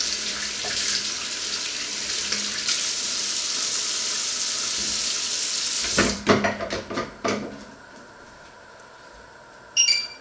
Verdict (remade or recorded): remade